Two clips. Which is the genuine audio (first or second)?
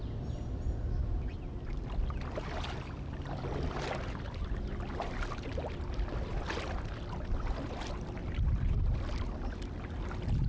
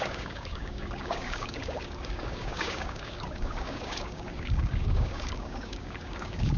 first